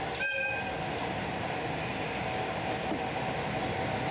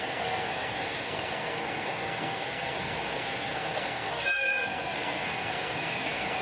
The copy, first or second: second